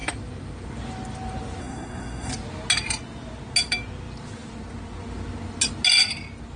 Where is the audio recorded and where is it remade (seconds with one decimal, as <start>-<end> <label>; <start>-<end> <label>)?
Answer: 0.0-1.6 recorded; 1.6-2.3 remade; 2.3-6.6 recorded